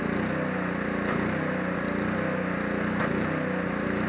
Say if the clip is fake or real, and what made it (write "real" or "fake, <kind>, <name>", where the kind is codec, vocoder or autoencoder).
real